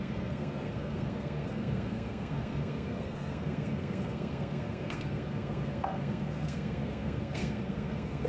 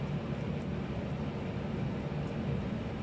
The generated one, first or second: first